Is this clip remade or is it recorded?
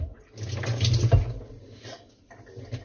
recorded